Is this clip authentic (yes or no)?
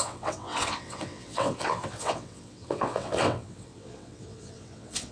no